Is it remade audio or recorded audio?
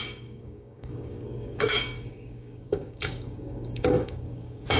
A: remade